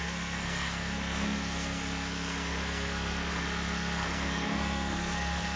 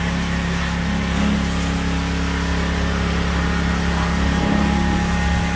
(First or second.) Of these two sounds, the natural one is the second